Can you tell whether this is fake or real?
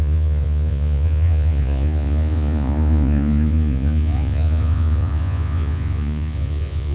fake